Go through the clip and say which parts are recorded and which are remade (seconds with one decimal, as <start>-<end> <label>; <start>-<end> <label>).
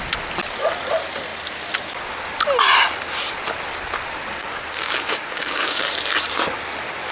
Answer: 0.0-4.4 recorded; 4.4-5.9 remade; 5.9-7.1 recorded